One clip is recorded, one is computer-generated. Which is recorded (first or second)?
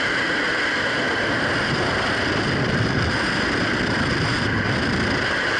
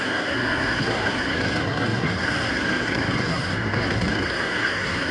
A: first